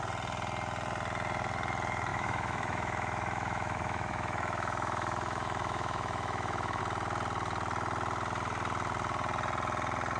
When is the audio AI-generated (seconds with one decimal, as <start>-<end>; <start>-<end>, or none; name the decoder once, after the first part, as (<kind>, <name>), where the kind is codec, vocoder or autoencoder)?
2.1-6.8 (autoencoder, DAC-VAE)